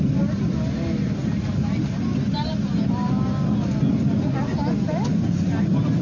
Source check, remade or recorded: recorded